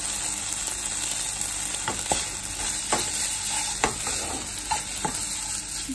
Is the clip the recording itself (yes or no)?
yes